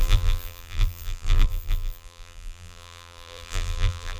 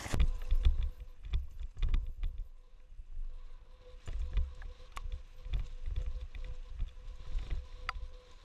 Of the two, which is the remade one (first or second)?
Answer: first